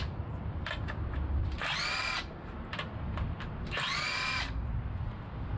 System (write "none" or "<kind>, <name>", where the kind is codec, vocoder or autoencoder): none